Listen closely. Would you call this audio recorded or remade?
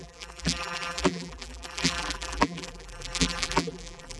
remade